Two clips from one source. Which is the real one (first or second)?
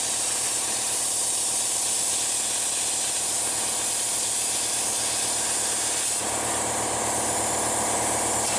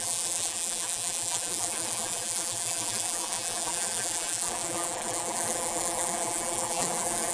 first